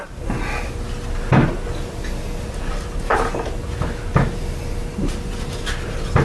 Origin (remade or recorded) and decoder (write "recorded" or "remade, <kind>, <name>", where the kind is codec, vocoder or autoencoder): recorded